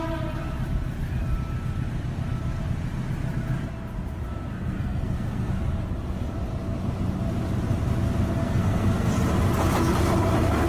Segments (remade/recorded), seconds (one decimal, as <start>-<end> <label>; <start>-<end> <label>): 0.0-4.5 recorded; 4.5-5.5 remade; 5.5-8.4 recorded; 8.4-9.1 remade; 9.1-10.7 recorded